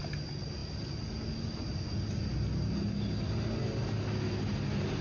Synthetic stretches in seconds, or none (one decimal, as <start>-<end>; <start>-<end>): none